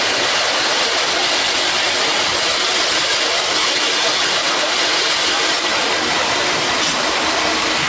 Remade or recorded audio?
recorded